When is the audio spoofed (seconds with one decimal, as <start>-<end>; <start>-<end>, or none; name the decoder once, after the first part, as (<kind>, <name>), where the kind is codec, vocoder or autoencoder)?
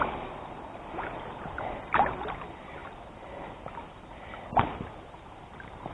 none